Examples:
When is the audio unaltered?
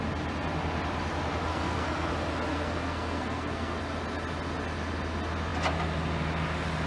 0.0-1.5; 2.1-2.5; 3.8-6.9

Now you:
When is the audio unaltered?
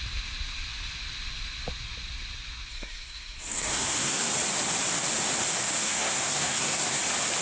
0.0-2.7; 4.3-5.8; 7.0-7.4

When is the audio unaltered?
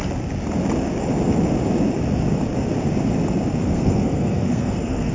0.0-3.6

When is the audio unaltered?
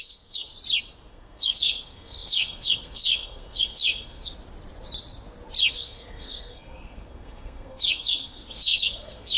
0.5-1.1; 4.3-5.7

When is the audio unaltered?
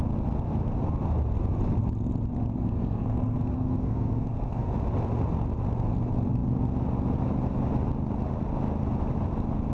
0.0-2.6; 4.7-9.7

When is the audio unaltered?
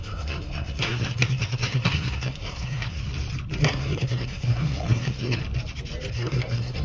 3.0-3.6; 5.4-6.1